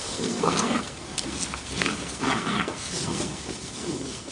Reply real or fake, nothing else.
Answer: fake